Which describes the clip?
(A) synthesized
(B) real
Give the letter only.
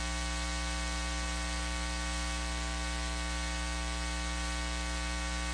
A